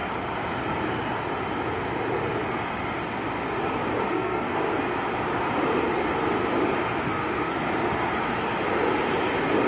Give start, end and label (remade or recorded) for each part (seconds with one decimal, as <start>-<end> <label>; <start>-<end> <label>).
0.0-4.0 recorded; 4.0-4.8 remade; 4.8-7.0 recorded; 7.0-7.6 remade; 7.6-9.7 recorded